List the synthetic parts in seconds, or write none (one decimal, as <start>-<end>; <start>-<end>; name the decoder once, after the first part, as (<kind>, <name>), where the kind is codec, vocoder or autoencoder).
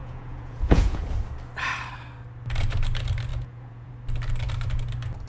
0.0-1.0 (vocoder, Vocos); 3.3-3.9